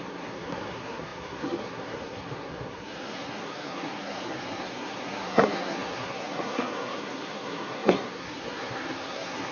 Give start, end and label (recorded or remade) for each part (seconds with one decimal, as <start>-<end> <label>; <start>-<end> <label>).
0.0-9.5 remade